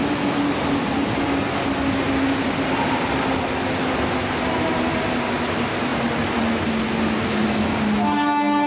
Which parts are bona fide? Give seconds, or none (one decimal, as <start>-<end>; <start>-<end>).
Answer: 0.0-8.7